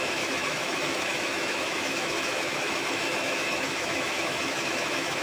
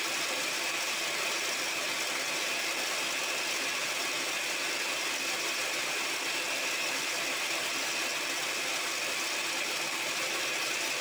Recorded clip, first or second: second